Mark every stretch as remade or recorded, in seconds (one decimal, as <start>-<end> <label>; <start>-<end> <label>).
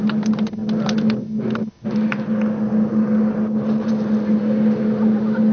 0.0-5.5 recorded